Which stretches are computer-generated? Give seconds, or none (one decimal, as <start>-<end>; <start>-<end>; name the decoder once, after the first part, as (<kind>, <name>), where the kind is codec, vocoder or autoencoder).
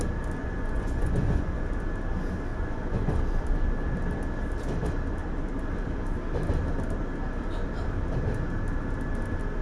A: 0.4-1.6 (vocoder, Vocos); 2.5-3.2